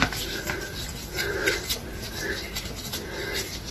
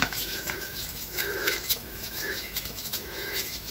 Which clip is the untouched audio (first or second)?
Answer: first